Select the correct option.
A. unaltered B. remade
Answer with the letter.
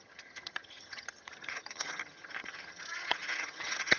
B